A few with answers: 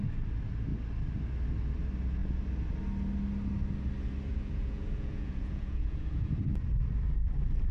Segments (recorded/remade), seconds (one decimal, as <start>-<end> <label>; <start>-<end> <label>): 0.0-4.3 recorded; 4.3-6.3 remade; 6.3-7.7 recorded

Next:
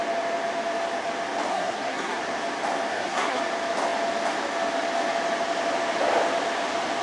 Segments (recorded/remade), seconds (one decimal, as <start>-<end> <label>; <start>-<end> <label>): 0.0-1.5 recorded; 1.5-2.2 remade; 2.2-2.9 recorded; 2.9-3.4 remade; 3.4-7.0 recorded

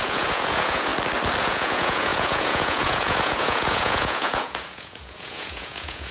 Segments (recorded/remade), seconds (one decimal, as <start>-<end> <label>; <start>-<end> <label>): 0.0-0.9 remade; 0.9-1.4 recorded; 1.4-6.1 remade

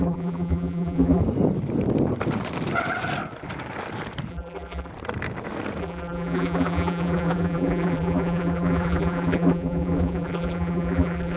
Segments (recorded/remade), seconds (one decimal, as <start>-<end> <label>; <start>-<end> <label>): 0.0-1.2 remade; 1.2-4.3 recorded; 4.3-4.9 remade; 4.9-5.8 recorded; 5.8-11.4 remade

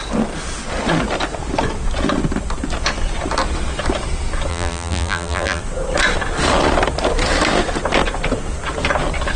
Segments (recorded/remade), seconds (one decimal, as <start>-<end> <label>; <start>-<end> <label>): 0.0-4.5 recorded; 4.5-5.6 remade; 5.6-9.4 recorded

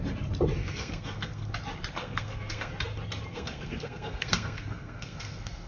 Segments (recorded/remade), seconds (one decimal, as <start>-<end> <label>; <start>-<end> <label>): 0.0-0.6 recorded; 0.6-1.5 remade; 1.5-2.0 recorded; 2.0-2.7 remade; 2.7-3.3 recorded; 3.3-5.7 remade

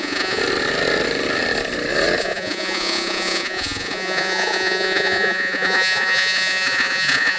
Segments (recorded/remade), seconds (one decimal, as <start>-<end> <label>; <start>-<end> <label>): 0.0-0.4 remade; 0.4-2.2 recorded; 2.2-7.4 remade

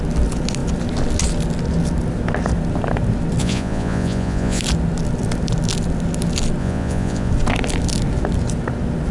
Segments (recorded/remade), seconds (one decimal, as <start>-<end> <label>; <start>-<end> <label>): 0.0-3.4 recorded; 3.4-4.6 remade; 4.6-6.6 recorded; 6.6-7.3 remade; 7.3-9.1 recorded